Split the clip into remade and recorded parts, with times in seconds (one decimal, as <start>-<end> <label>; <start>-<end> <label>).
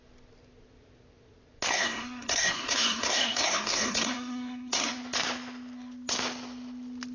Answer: 0.0-1.7 recorded; 1.7-5.0 remade; 5.0-7.1 recorded